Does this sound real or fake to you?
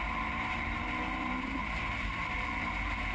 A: fake